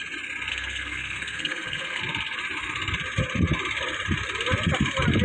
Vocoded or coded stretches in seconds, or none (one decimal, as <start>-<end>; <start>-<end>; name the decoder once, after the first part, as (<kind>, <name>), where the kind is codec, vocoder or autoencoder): 0.5-2.0 (codec, SNAC)